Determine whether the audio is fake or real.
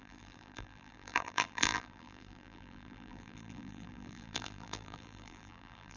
fake